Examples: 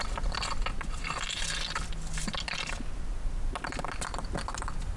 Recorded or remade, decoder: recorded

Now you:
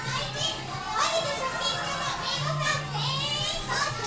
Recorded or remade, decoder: recorded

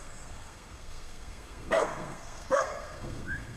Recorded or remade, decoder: remade, codec, SNAC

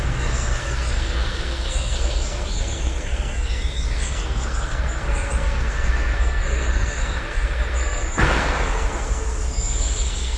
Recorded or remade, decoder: remade, codec, SNAC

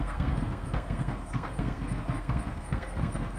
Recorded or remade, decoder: remade, codec, SNAC